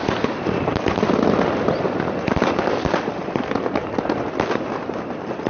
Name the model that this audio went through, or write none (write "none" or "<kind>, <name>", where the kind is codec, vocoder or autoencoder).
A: none